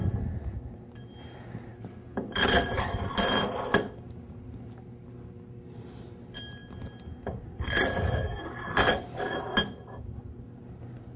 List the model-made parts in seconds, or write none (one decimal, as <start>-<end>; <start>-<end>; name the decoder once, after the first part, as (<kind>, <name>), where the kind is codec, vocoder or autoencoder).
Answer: none